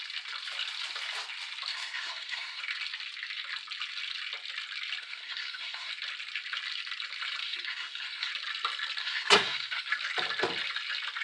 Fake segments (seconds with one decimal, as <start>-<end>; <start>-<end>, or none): 1.7-2.6; 5.0-5.9; 7.4-8.3; 9.0-9.9